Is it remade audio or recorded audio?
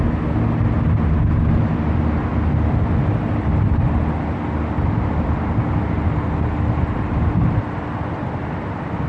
recorded